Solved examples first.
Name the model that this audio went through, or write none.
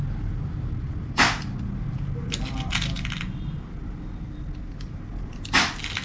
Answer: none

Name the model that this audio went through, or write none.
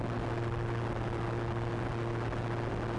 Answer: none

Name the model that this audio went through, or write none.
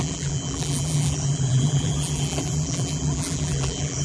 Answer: vocoder, BigVGAN v2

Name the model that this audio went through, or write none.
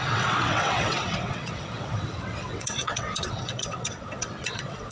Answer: vocoder, WaveNeXt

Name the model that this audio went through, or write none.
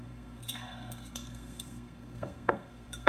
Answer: codec, SNAC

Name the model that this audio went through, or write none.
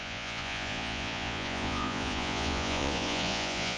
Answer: vocoder, Vocos